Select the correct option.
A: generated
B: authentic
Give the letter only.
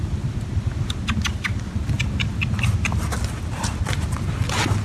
B